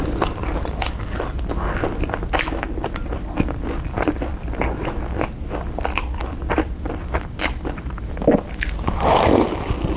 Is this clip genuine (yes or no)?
no